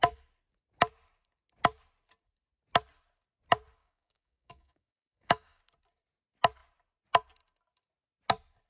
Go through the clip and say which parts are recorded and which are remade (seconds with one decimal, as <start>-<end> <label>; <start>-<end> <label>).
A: 0.0-3.8 recorded; 3.8-5.6 remade; 5.6-8.7 recorded